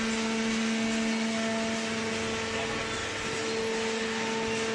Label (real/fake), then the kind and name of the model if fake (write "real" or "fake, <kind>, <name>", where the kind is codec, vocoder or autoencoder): real